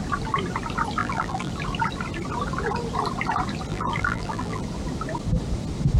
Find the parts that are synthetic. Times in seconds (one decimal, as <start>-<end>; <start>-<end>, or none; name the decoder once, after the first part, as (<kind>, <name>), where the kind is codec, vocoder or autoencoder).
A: 1.0-1.5 (vocoder, BigVGAN v2); 3.7-4.6